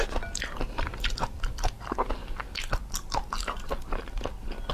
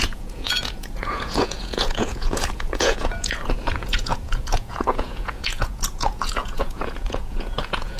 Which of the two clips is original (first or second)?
first